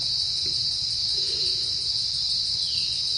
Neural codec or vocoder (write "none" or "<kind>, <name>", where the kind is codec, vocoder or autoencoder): vocoder, Vocos